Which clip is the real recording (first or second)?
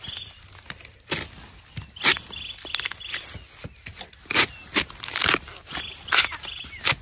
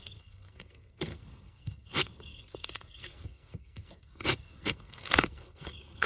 first